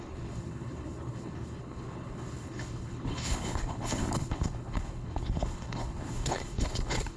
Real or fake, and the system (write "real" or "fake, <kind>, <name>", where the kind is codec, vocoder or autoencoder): fake, codec, HILCodec